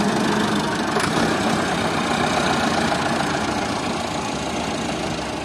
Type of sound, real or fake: real